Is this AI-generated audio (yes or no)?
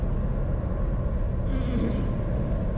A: no